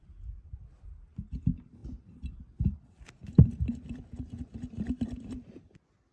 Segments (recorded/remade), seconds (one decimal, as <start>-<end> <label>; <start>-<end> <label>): 0.0-6.1 recorded